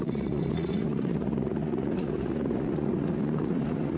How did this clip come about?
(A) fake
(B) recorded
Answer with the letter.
A